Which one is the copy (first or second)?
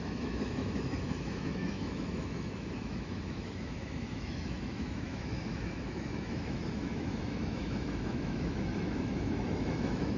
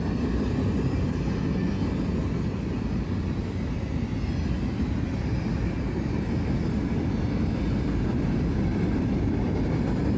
first